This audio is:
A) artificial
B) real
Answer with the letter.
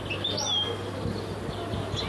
B